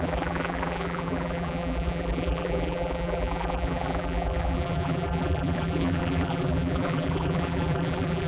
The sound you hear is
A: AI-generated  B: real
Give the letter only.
A